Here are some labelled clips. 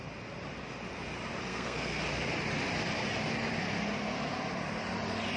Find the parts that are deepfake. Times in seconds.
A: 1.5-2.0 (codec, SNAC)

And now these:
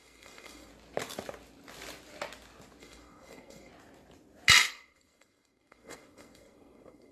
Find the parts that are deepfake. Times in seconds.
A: 0.0-0.7 (codec, SNAC); 2.8-3.7; 4.7-7.1

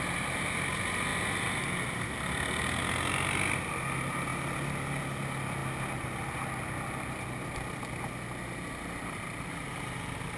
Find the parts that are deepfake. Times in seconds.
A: none

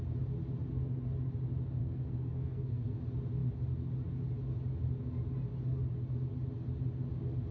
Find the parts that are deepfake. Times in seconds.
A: 1.8-3.0 (codec, SNAC)

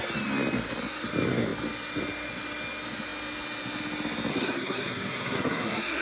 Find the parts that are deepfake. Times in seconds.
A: 4.3-6.0 (codec, SNAC)

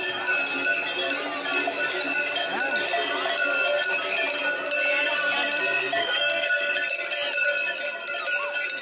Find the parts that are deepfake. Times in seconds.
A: 6.0-6.7 (codec, SNAC)

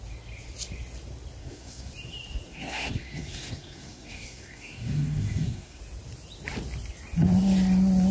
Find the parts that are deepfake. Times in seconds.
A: 1.4-1.9 (codec, SNAC); 2.5-5.8

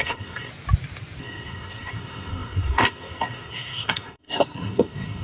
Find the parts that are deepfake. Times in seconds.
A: 0.0-0.5 (codec, SNAC); 1.2-5.2